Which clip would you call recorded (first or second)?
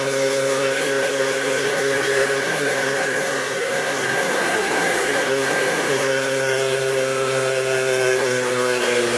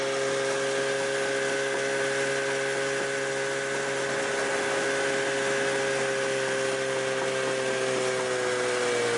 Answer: second